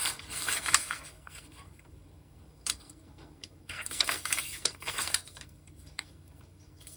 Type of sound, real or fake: fake